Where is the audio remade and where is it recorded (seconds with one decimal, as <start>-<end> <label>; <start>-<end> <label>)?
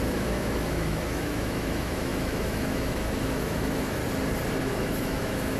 0.0-4.0 remade; 4.0-4.6 recorded; 4.6-5.6 remade